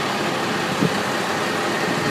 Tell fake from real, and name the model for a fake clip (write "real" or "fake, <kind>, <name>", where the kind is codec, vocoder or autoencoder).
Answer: real